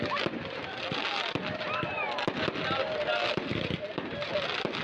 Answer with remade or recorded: recorded